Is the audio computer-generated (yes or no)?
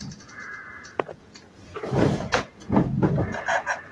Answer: yes